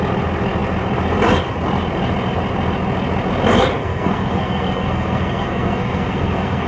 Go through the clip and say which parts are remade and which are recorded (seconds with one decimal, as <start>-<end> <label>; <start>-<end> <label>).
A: 0.0-3.8 recorded; 3.8-6.7 remade